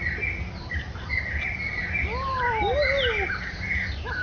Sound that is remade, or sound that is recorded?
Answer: recorded